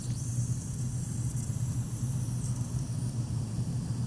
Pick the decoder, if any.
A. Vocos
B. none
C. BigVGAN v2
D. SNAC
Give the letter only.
B